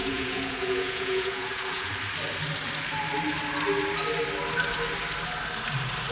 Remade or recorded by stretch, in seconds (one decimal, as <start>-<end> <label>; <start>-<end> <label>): 0.0-1.9 remade; 1.9-6.1 recorded